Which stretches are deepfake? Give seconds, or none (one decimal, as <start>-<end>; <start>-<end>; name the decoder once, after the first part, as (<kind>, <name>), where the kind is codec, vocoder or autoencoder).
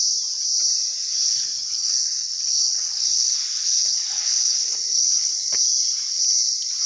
1.2-5.3 (codec, HILCodec)